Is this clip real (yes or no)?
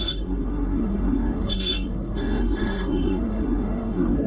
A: no